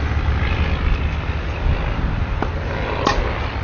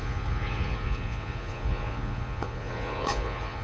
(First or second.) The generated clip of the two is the second